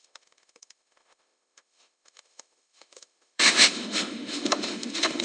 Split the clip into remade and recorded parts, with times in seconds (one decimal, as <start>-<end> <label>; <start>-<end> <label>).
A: 0.0-5.2 remade